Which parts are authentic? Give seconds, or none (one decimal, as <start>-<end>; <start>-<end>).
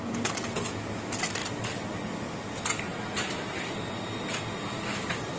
0.0-5.4